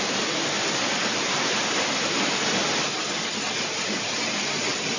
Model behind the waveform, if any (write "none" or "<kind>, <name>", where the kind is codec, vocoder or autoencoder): none